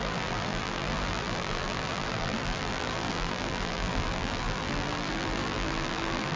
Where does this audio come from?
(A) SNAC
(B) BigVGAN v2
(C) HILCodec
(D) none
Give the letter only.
B